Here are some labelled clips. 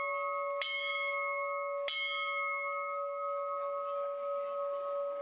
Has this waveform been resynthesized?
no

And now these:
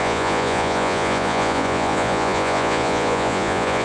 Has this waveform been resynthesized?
yes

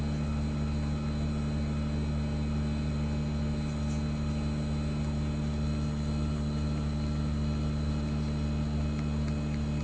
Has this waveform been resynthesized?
no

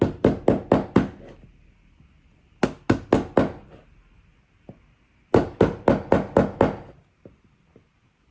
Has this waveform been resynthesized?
no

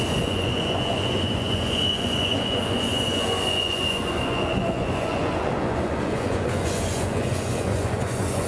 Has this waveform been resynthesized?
yes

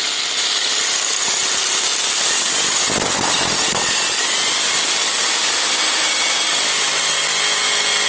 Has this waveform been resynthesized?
no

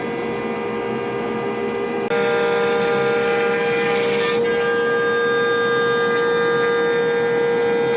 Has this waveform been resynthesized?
no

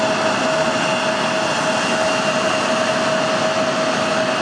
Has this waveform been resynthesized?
no